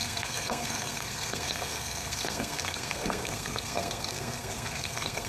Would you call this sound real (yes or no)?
no